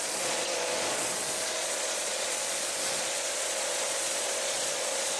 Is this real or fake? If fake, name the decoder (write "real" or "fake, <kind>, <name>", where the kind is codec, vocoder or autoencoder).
fake, vocoder, Vocos